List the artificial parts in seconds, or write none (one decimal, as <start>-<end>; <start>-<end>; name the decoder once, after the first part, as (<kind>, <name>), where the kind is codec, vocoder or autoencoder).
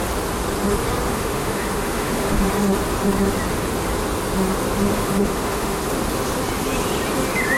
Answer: 1.1-2.5 (autoencoder, DAC-VAE); 4.9-5.8